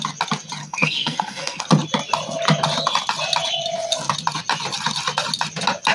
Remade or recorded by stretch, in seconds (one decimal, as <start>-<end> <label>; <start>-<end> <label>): 0.0-0.6 recorded; 0.6-1.6 remade; 1.6-5.9 recorded